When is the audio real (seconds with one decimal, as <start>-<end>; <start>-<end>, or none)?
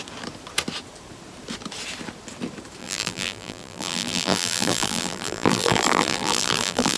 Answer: 0.0-2.8